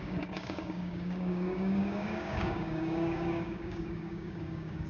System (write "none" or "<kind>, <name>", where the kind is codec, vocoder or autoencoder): codec, DAC